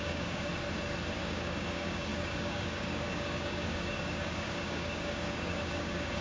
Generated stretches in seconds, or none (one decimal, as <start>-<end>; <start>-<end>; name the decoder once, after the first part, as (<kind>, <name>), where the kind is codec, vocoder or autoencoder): 0.0-0.5 (codec, DAC); 1.2-6.2